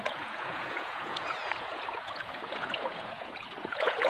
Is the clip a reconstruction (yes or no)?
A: yes